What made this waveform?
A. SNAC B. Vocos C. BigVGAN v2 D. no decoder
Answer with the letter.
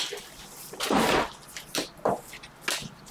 D